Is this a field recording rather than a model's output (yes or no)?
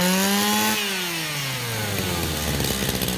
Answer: yes